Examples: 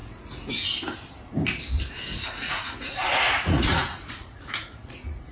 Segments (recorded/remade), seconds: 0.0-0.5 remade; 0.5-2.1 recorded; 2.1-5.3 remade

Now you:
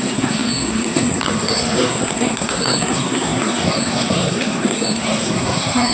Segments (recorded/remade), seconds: 0.0-5.9 remade